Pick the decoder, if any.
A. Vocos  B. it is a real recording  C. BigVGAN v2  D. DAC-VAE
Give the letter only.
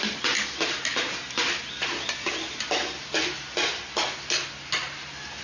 B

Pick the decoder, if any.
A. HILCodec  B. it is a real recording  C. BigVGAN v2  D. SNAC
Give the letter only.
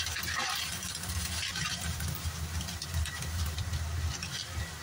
B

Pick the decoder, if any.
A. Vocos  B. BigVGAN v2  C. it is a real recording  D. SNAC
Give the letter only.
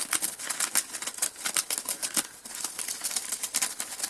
C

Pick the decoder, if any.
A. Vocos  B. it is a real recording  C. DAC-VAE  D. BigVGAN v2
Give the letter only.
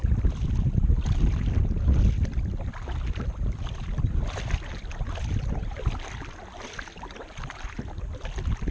B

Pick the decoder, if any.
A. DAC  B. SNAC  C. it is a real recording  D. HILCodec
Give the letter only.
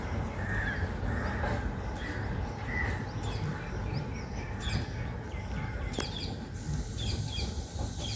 C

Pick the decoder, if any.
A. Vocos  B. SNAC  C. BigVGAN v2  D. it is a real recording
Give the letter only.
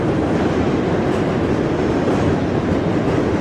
D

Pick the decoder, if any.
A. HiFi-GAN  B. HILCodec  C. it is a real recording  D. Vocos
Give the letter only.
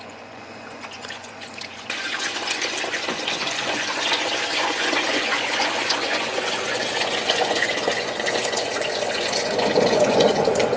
D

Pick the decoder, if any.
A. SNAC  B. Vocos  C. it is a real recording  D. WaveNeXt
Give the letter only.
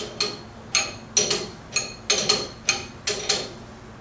C